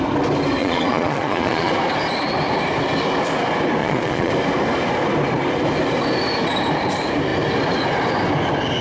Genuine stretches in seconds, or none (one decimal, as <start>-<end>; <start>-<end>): 0.0-0.6; 1.7-3.8; 4.3-8.8

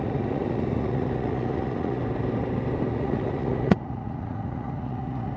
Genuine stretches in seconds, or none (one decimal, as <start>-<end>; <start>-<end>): 2.0-2.9

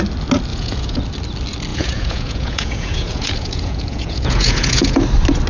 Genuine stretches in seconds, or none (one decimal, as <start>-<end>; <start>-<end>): 0.0-0.5; 1.0-1.7; 5.0-5.5

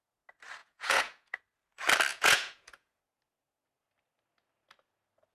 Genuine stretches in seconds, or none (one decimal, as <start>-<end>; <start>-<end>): 0.0-0.6; 1.4-2.1; 3.0-5.3

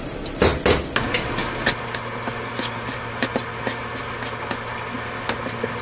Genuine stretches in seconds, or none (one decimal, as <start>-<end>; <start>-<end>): 0.0-5.8

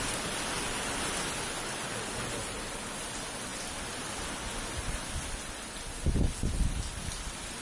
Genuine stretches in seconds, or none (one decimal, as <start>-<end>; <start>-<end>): 0.0-7.6

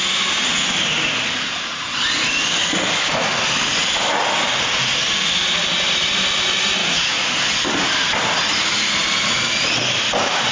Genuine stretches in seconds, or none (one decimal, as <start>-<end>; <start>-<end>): 0.0-6.8; 7.4-10.5

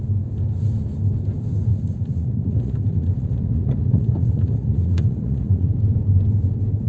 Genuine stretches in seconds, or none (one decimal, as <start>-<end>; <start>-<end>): 0.0-1.7; 5.8-6.9